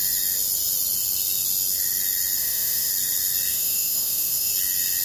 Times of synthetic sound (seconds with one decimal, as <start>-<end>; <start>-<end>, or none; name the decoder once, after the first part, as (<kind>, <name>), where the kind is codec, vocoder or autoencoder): 2.4-2.9 (autoencoder, DAC-VAE); 3.5-4.5